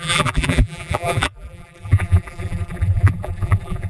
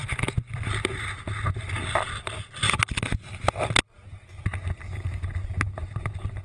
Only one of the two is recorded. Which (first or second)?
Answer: second